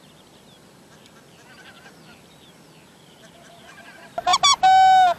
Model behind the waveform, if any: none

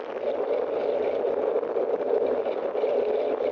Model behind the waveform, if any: none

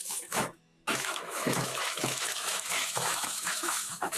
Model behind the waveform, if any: autoencoder, DAC-VAE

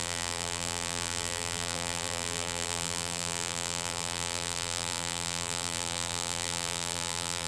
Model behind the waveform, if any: vocoder, BigVGAN v2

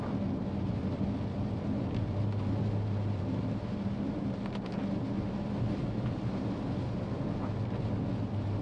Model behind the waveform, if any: none